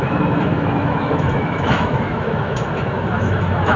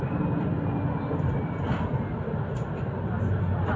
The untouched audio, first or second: second